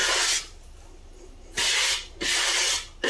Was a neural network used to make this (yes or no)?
no